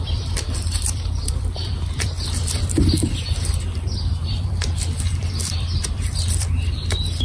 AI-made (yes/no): yes